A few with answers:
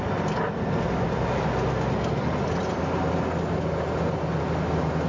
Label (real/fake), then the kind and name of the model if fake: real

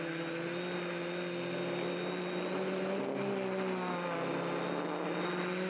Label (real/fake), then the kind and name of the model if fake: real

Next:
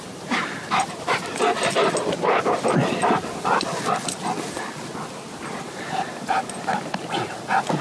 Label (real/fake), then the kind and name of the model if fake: real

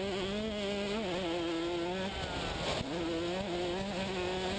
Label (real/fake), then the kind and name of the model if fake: real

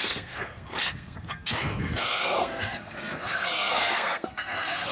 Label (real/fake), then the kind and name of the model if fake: fake, codec, SNAC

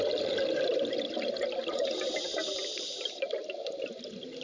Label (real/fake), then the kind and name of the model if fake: real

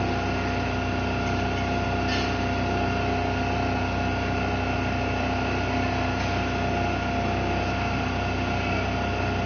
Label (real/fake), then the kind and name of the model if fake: real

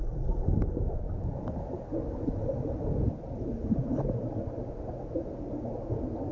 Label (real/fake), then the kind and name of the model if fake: real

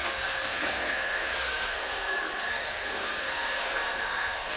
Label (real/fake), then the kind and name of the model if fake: fake, codec, SNAC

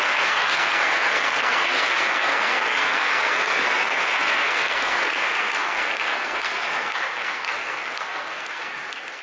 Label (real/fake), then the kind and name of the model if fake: fake, codec, SNAC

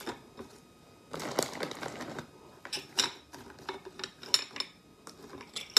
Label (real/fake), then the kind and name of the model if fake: real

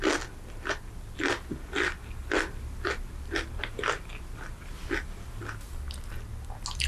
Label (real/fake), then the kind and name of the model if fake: real